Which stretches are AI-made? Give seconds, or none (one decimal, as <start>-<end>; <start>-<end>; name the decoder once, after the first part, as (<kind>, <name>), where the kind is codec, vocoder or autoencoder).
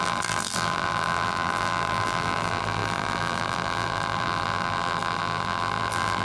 0.0-6.2 (vocoder, BigVGAN v2)